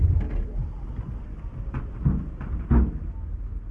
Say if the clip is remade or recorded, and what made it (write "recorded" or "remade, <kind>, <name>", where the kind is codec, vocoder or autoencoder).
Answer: recorded